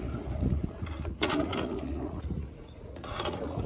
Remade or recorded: remade